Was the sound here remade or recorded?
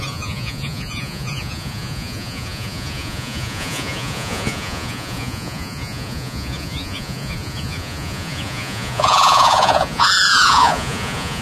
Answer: remade